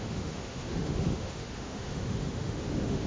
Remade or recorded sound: remade